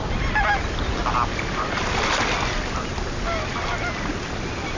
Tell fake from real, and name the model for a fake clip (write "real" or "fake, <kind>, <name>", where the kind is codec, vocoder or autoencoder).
real